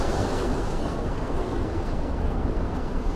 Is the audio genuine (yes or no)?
no